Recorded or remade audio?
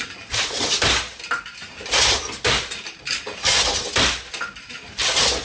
recorded